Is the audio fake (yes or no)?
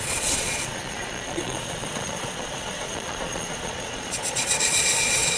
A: yes